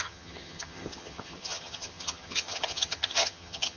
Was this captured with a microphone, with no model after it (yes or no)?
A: no